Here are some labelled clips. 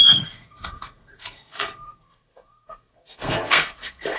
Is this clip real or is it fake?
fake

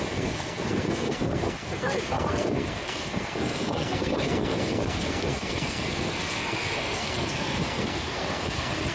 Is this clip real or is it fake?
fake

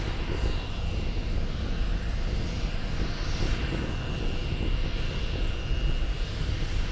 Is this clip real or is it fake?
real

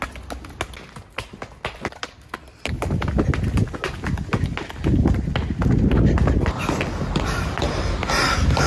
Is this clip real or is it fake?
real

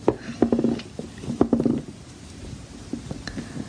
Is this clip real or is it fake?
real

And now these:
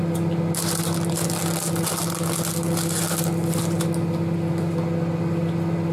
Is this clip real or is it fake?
real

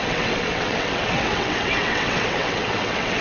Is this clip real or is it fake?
fake